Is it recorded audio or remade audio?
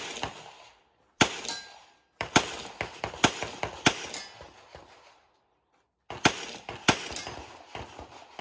recorded